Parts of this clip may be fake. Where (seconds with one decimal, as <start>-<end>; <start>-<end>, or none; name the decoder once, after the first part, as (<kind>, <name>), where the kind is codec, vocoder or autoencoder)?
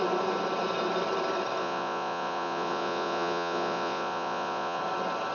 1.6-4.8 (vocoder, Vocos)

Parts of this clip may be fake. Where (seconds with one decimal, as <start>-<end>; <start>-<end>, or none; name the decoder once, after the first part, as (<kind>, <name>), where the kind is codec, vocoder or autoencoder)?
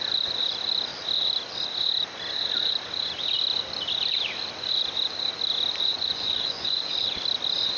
5.9-6.9 (vocoder, Vocos)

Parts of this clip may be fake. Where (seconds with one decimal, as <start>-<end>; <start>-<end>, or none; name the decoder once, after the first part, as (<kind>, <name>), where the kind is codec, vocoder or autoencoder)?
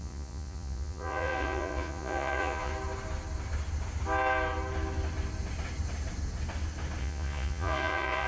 0.0-2.7 (vocoder, Vocos); 7.0-8.3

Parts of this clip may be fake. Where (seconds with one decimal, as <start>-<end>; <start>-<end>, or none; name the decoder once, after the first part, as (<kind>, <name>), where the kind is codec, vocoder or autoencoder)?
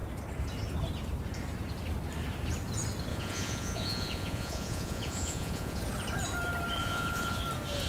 3.1-5.8 (vocoder, Vocos); 6.8-7.4